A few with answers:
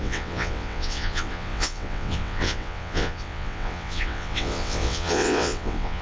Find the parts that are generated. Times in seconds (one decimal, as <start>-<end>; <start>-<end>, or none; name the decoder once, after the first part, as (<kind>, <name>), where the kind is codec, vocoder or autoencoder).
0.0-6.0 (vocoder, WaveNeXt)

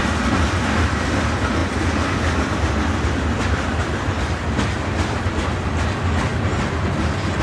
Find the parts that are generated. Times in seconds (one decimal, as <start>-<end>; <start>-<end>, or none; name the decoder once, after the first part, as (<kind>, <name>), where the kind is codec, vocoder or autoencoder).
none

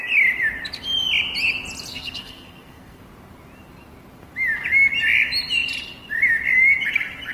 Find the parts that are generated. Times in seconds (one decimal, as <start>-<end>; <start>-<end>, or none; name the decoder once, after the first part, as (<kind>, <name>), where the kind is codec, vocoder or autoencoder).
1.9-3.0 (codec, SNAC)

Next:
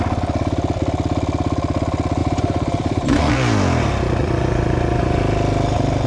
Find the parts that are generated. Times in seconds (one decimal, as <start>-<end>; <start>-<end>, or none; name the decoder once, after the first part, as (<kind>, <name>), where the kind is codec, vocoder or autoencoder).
2.2-3.3 (vocoder, Vocos); 4.2-5.2

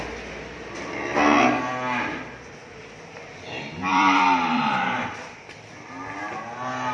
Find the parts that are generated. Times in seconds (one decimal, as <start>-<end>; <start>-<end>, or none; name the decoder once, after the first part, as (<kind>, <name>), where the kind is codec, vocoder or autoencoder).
3.8-5.7 (vocoder, BigVGAN v2)